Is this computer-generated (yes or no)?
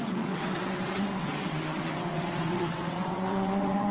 yes